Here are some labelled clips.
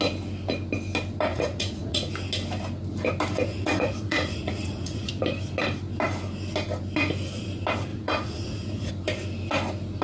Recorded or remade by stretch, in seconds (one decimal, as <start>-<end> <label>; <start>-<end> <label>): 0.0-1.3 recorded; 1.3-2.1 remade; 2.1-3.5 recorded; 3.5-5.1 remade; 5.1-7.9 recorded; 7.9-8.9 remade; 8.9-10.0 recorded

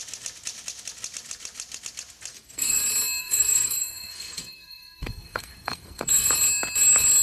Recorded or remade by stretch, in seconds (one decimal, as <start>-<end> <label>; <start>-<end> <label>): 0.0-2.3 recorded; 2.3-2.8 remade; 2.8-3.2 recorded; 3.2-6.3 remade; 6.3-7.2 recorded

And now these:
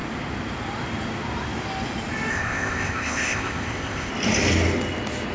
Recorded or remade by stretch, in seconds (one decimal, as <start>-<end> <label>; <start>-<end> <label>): 0.0-2.3 recorded; 2.3-4.1 remade; 4.1-5.3 recorded